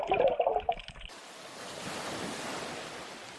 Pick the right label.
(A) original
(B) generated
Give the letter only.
A